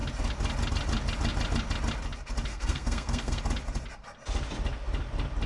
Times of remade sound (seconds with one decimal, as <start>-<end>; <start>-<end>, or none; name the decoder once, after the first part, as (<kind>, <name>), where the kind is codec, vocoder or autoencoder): 2.5-3.4 (codec, SNAC)